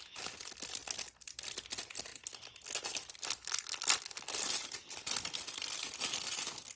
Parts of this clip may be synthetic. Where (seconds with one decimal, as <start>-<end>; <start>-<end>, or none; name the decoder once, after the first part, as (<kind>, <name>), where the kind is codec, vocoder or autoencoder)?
none